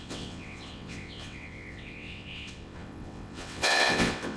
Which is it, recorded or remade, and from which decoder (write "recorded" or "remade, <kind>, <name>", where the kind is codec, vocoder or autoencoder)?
remade, vocoder, WaveNeXt